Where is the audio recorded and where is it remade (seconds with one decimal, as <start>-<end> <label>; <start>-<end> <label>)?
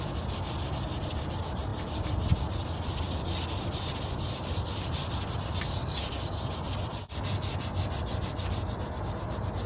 0.0-9.7 recorded